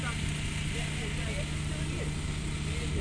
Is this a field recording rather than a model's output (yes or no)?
yes